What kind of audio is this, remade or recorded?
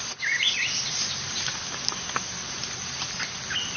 recorded